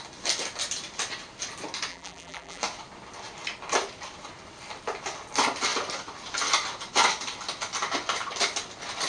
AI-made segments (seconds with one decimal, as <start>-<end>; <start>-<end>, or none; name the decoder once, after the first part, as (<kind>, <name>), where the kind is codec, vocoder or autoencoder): 1.9-2.6 (vocoder, BigVGAN v2)